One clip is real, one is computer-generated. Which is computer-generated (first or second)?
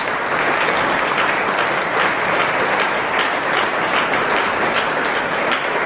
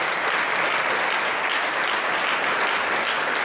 first